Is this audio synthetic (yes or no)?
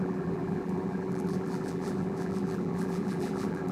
yes